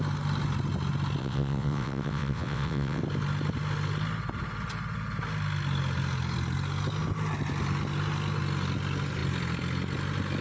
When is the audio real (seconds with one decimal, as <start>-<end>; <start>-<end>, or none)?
0.0-1.2; 3.0-10.4